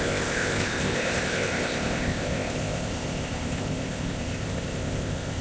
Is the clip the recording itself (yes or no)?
no